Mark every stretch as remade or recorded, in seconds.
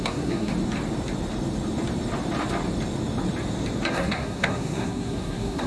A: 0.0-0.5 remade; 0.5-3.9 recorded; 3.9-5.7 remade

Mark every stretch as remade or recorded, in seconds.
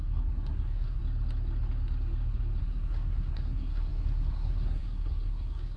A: 0.0-1.0 remade; 1.0-2.6 recorded; 2.6-5.8 remade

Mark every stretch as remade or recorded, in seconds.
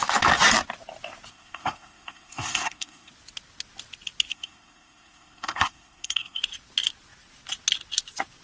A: 0.0-1.3 recorded; 1.3-3.1 remade; 3.1-4.3 recorded; 4.3-6.4 remade; 6.4-8.4 recorded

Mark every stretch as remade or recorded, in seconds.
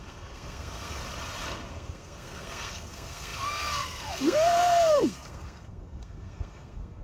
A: 0.0-1.0 remade; 1.0-1.7 recorded; 1.7-7.0 remade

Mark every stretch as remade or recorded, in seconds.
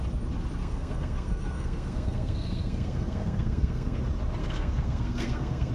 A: 0.0-0.6 recorded; 0.6-4.0 remade; 4.0-4.4 recorded; 4.4-5.7 remade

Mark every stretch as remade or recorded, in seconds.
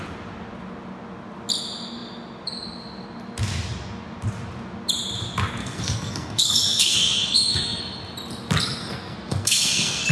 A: 0.0-5.6 recorded; 5.6-7.8 remade; 7.8-8.8 recorded; 8.8-10.1 remade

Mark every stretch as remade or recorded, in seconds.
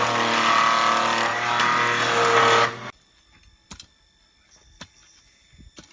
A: 0.0-5.9 recorded